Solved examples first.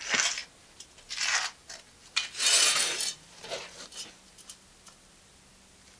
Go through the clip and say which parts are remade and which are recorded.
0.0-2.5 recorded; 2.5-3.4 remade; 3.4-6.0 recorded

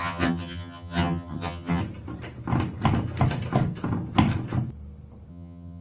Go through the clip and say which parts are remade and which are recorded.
0.0-1.8 remade; 1.8-5.3 recorded; 5.3-5.8 remade

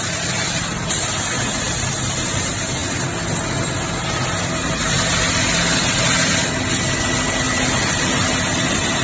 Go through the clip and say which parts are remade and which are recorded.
0.0-9.0 recorded

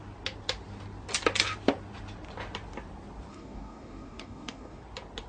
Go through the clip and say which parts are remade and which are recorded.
0.0-3.3 recorded; 3.3-4.8 remade; 4.8-5.3 recorded

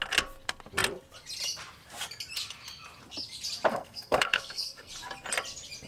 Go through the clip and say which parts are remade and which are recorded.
0.0-3.7 recorded; 3.7-4.9 remade; 4.9-5.9 recorded

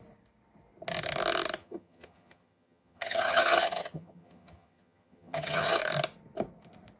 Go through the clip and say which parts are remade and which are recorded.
0.0-1.6 recorded; 1.6-5.8 remade; 5.8-7.0 recorded

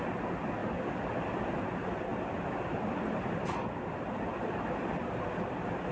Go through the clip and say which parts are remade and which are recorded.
0.0-0.6 recorded; 0.6-1.6 remade; 1.6-2.1 recorded; 2.1-5.9 remade

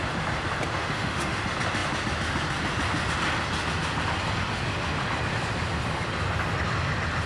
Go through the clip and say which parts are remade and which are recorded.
0.0-0.8 recorded; 0.8-1.4 remade; 1.4-7.3 recorded